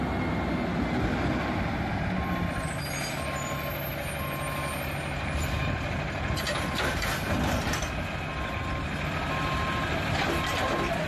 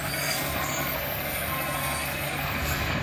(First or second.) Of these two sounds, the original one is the first